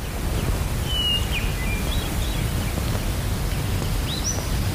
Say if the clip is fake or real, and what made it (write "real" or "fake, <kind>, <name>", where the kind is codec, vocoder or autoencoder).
real